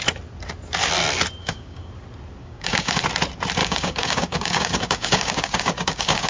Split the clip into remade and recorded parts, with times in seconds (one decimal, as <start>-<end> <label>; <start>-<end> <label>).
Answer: 0.0-1.4 recorded; 1.4-1.9 remade; 1.9-2.4 recorded; 2.4-3.0 remade; 3.0-3.6 recorded; 3.6-6.3 remade